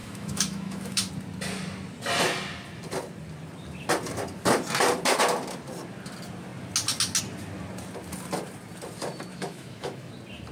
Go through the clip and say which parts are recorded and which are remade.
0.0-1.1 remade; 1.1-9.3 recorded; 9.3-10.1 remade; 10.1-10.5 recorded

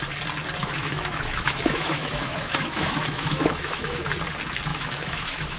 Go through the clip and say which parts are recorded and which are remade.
0.0-0.6 recorded; 0.6-4.0 remade; 4.0-4.7 recorded; 4.7-5.6 remade